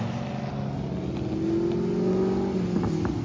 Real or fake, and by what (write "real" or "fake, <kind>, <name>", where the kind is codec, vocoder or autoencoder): real